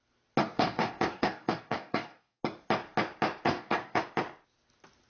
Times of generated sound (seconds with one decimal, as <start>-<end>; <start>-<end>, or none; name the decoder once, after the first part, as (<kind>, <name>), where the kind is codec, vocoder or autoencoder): 0.4-2.4 (codec, DAC); 3.5-4.0